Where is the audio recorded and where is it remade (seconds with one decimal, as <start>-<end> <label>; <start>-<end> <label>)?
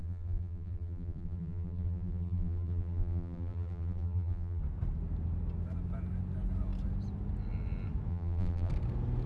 0.0-4.6 remade; 4.6-8.1 recorded; 8.1-8.7 remade; 8.7-9.3 recorded